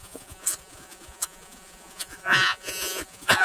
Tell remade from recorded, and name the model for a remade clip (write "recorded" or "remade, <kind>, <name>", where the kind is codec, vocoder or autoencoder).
remade, vocoder, Vocos